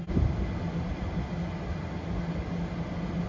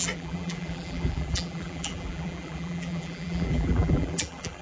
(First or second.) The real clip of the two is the first